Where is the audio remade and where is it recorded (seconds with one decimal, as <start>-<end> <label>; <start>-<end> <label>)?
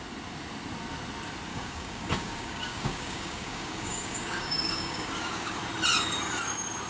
0.0-1.5 recorded; 1.5-5.6 remade; 5.6-6.9 recorded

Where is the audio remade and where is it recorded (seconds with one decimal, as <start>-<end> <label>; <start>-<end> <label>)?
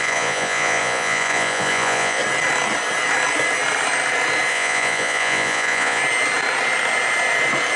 0.0-2.2 remade; 2.2-4.5 recorded; 4.5-6.0 remade; 6.0-7.8 recorded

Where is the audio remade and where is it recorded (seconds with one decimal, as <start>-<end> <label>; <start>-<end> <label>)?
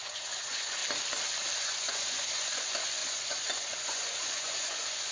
0.0-0.8 remade; 0.8-1.6 recorded; 1.6-5.1 remade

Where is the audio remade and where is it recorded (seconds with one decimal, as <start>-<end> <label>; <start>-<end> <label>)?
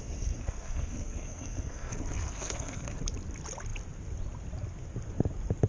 0.0-0.4 recorded; 0.4-3.0 remade; 3.0-5.7 recorded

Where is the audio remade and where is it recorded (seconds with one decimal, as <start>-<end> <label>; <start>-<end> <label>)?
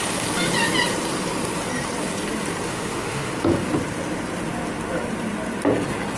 0.0-2.7 recorded; 2.7-3.3 remade; 3.3-6.2 recorded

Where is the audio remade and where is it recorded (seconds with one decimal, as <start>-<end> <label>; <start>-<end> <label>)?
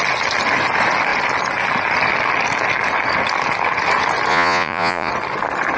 0.0-4.3 recorded; 4.3-5.1 remade; 5.1-5.8 recorded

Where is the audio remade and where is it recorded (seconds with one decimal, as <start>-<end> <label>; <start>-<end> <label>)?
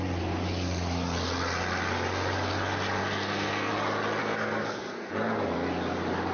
0.0-3.0 recorded; 3.0-3.7 remade; 3.7-4.2 recorded; 4.2-5.1 remade; 5.1-6.3 recorded